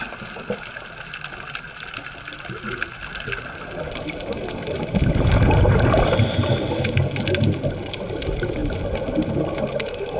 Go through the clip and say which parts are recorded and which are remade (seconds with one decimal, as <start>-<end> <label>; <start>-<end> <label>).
0.0-10.2 recorded